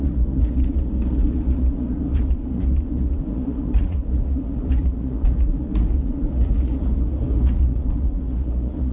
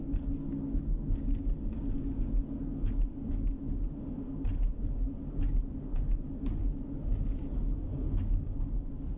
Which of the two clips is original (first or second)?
second